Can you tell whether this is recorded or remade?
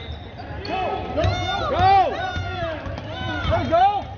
recorded